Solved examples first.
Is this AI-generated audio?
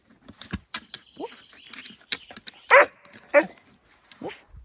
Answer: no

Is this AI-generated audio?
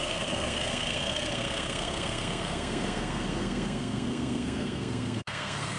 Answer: yes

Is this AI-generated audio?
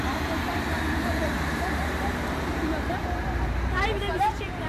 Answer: yes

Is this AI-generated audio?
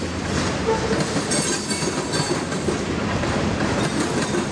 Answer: no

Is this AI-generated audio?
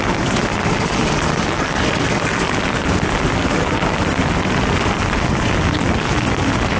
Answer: no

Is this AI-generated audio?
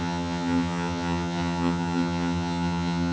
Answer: yes